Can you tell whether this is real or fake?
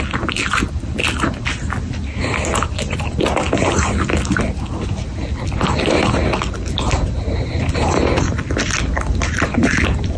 real